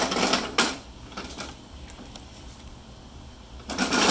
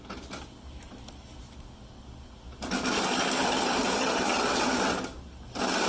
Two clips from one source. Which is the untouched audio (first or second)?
second